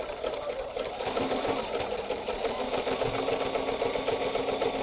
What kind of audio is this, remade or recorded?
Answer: recorded